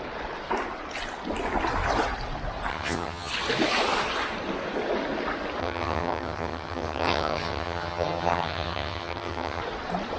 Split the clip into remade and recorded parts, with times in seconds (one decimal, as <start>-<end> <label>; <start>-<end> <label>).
0.0-2.7 recorded; 2.7-3.3 remade; 3.3-5.6 recorded; 5.6-9.6 remade; 9.6-10.2 recorded